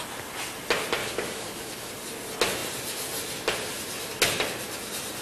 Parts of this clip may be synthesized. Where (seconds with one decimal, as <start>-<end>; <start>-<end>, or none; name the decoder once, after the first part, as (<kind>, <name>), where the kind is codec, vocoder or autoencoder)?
1.0-1.9 (codec, DAC)